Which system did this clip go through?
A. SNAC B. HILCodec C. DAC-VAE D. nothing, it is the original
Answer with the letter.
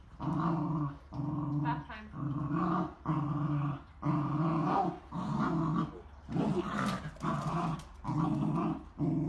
D